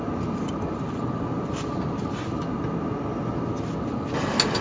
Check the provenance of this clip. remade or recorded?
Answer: recorded